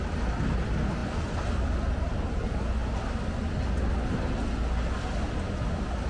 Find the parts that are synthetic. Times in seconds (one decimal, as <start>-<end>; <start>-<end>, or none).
none